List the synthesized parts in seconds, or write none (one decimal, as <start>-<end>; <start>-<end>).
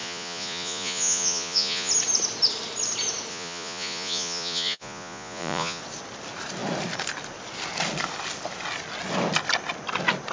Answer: 0.0-1.9; 3.3-5.8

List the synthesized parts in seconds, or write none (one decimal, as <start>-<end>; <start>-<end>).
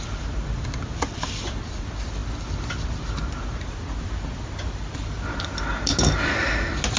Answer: none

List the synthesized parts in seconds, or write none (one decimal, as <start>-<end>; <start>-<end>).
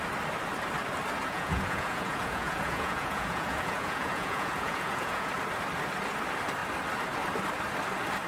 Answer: 1.2-5.3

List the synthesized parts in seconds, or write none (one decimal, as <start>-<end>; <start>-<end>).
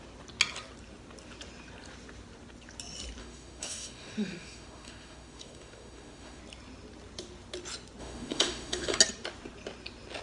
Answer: 3.2-6.4; 8.0-9.0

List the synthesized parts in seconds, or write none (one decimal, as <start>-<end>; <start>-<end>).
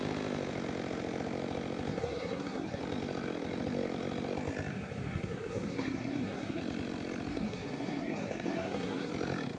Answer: 1.9-2.8; 4.7-6.6; 7.3-9.1